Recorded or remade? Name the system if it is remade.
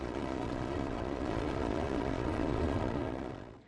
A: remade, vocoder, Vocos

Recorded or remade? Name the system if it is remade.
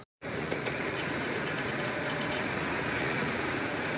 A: remade, vocoder, Vocos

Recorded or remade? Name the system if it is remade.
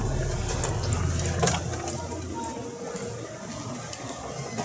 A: recorded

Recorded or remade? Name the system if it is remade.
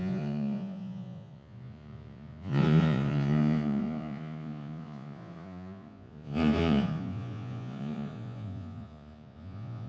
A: remade, vocoder, Vocos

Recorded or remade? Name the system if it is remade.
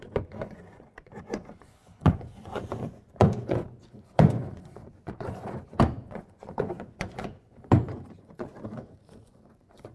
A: remade, vocoder, Vocos